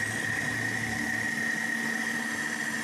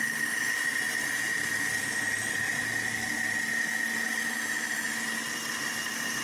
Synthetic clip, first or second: first